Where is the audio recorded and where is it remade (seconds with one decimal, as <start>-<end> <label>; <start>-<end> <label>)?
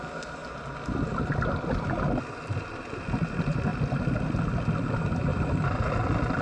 0.0-5.3 recorded; 5.3-5.9 remade; 5.9-6.4 recorded